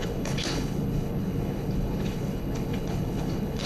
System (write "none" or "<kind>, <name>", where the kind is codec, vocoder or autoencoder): codec, HILCodec